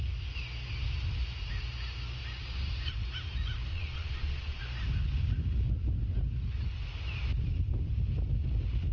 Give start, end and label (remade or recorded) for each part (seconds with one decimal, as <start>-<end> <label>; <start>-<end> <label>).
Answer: 0.0-3.7 recorded; 3.7-4.6 remade; 4.6-8.9 recorded

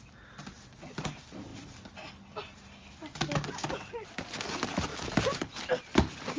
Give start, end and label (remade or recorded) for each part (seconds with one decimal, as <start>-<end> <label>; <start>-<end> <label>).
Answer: 0.0-6.4 recorded